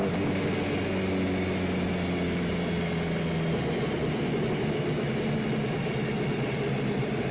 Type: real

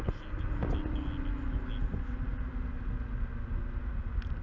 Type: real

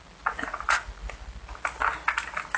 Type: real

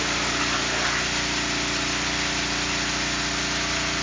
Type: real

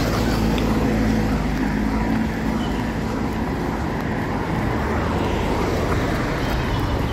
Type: real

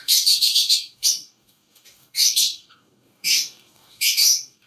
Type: fake